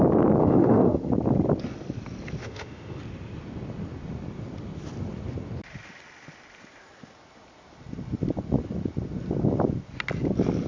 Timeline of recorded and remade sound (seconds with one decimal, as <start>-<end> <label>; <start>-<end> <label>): 0.0-0.4 recorded; 0.4-1.1 remade; 1.1-2.4 recorded; 2.4-3.0 remade; 3.0-10.7 recorded